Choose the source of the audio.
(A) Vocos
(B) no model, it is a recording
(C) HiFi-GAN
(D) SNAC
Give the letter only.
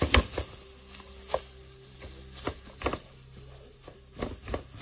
B